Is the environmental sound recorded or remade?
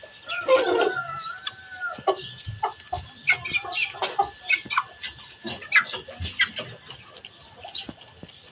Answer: recorded